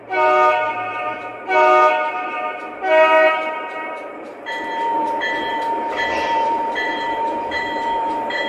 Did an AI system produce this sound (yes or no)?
yes